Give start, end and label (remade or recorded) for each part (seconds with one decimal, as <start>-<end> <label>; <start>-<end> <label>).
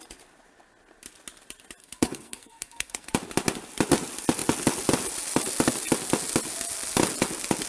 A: 0.0-1.8 recorded; 1.8-3.1 remade; 3.1-7.7 recorded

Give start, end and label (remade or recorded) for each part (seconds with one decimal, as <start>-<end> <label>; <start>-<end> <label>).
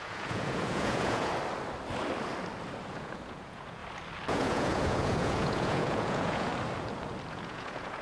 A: 0.0-1.3 remade; 1.3-2.9 recorded; 2.9-3.8 remade; 3.8-4.3 recorded; 4.3-6.5 remade; 6.5-7.3 recorded; 7.3-8.0 remade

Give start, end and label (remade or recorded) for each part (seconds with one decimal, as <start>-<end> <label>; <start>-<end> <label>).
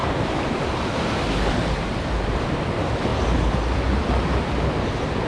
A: 0.0-5.3 recorded